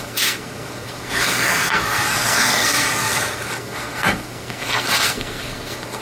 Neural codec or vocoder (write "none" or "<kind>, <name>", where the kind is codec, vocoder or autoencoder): codec, SNAC